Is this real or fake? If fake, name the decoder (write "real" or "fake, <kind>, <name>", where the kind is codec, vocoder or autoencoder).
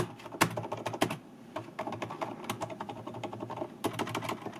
real